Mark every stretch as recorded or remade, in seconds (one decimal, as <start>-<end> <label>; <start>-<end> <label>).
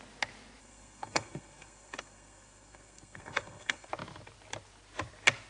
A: 0.0-0.6 recorded; 0.6-3.9 remade; 3.9-5.5 recorded